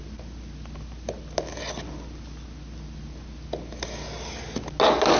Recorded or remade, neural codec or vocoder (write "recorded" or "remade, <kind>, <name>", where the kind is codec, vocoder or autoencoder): recorded